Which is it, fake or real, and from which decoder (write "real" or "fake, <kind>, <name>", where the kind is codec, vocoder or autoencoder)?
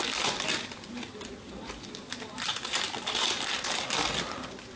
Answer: real